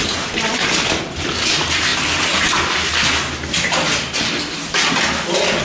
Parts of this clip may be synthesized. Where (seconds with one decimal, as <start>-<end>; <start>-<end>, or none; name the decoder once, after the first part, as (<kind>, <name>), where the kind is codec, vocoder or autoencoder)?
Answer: 0.0-1.9 (vocoder, BigVGAN v2)